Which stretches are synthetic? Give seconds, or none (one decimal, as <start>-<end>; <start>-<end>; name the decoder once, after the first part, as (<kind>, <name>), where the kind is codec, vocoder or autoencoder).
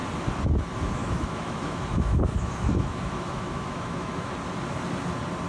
1.0-4.3 (autoencoder, DAC-VAE)